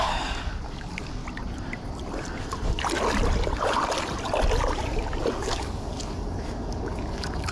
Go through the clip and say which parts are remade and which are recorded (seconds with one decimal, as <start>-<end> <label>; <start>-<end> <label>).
0.0-1.2 remade; 1.2-5.3 recorded; 5.3-7.5 remade

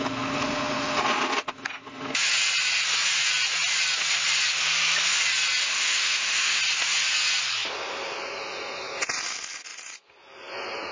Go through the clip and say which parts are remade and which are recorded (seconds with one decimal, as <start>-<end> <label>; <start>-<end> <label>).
0.0-5.6 recorded; 5.6-6.6 remade; 6.6-10.9 recorded

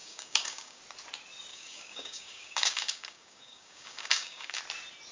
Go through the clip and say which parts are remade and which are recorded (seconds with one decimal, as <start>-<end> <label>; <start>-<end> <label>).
0.0-0.8 remade; 0.8-1.5 recorded; 1.5-4.6 remade; 4.6-5.1 recorded

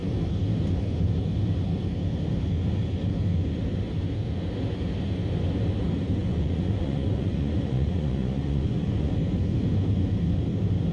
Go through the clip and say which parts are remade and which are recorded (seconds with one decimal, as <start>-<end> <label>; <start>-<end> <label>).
0.0-6.2 recorded; 6.2-9.1 remade; 9.1-10.9 recorded

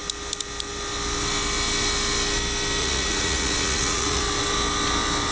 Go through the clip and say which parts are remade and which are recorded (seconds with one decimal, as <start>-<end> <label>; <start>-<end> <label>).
0.0-2.8 recorded; 2.8-4.2 remade; 4.2-5.3 recorded

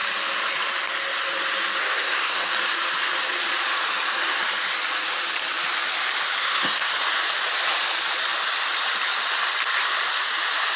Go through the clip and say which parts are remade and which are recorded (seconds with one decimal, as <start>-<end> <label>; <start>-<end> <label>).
0.0-1.8 recorded; 1.8-2.5 remade; 2.5-6.4 recorded; 6.4-6.9 remade; 6.9-10.8 recorded

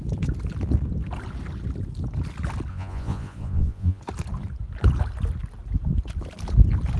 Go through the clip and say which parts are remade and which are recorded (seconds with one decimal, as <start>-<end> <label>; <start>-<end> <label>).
0.0-2.7 recorded; 2.7-4.0 remade; 4.0-7.0 recorded

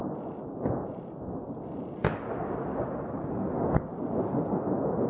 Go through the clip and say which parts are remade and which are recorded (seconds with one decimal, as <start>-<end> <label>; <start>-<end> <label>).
0.0-5.1 recorded